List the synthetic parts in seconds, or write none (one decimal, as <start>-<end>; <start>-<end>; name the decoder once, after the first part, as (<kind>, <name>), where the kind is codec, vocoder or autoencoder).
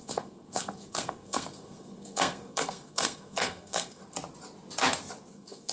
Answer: 0.0-4.0 (codec, SNAC); 5.3-5.7